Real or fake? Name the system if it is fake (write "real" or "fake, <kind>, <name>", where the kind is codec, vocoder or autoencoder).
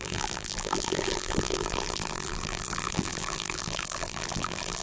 fake, vocoder, BigVGAN v2